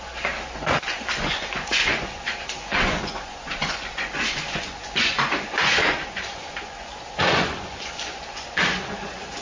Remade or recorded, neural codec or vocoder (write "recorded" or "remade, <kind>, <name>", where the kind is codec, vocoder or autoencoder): remade, vocoder, Vocos